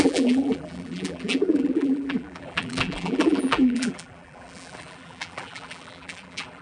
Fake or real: fake